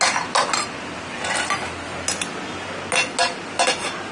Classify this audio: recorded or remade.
recorded